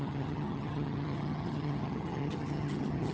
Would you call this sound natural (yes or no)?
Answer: no